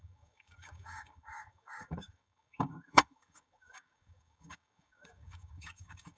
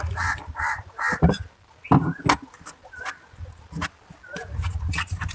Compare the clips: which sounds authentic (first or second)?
second